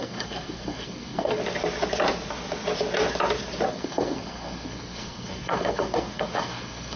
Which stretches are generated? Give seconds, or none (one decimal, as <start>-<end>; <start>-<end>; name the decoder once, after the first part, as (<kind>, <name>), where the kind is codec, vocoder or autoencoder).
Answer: 0.0-1.4 (codec, SNAC); 3.7-7.0